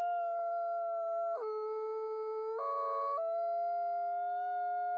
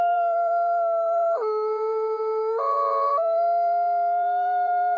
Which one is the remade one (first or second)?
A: second